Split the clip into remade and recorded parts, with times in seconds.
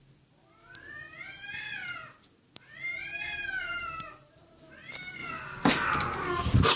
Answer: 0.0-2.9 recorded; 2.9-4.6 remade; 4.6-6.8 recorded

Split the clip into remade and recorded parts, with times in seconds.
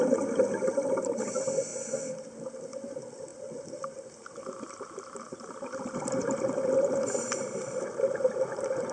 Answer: 0.0-1.7 remade; 1.7-2.6 recorded; 2.6-8.9 remade